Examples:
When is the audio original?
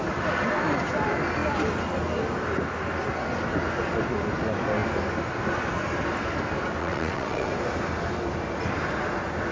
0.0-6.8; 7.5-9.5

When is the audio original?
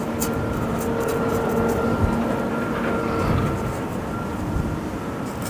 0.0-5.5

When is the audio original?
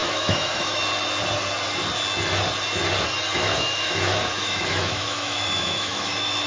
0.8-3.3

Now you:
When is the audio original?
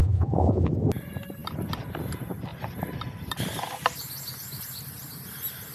0.7-5.7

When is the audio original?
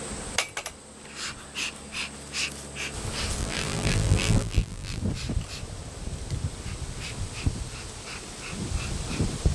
0.0-3.4; 5.0-9.5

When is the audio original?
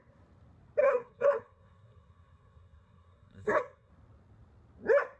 0.0-0.8; 3.9-5.2